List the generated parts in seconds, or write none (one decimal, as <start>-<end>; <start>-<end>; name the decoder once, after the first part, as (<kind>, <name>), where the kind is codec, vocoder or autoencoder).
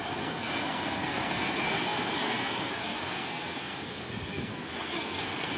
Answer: 0.0-5.6 (codec, SNAC)